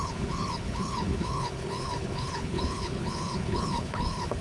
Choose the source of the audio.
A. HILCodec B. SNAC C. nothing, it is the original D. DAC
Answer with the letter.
A